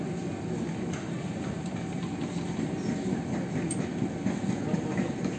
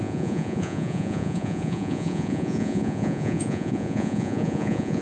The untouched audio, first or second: first